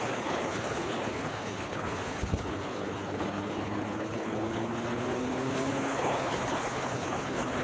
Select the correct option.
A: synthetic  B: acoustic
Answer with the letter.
A